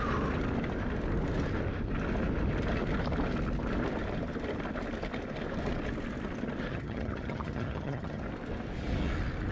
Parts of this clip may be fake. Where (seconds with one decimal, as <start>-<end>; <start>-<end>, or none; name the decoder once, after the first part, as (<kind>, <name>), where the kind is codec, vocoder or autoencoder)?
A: 6.7-8.2 (vocoder, HiFi-GAN)